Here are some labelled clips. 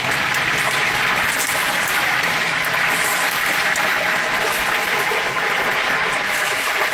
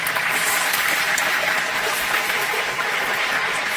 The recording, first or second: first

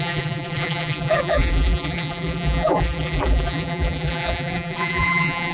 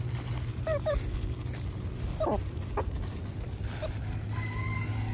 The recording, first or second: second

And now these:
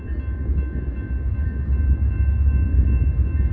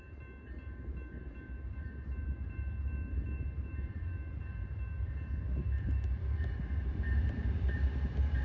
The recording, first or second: first